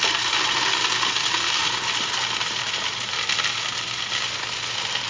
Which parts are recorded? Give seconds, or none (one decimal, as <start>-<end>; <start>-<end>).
0.0-5.1